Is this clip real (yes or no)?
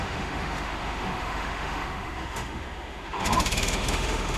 no